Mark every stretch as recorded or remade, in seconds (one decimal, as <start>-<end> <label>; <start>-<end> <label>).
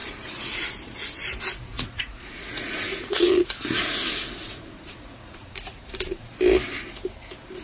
0.0-0.7 remade; 0.7-1.7 recorded; 1.7-3.5 remade; 3.5-4.4 recorded; 4.4-6.3 remade; 6.3-7.6 recorded